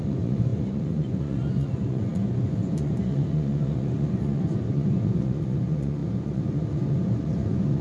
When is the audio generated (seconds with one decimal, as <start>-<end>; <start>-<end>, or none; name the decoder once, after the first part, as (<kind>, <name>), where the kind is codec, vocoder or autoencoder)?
0.0-7.8 (vocoder, Vocos)